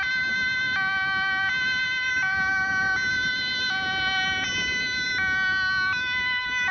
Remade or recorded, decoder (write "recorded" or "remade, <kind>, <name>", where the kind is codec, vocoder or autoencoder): recorded